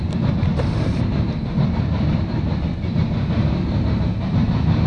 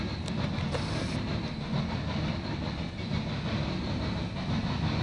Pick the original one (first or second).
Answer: second